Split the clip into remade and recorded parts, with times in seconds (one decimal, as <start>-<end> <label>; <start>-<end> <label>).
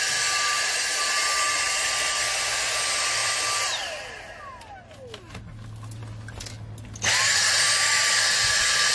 0.0-8.9 recorded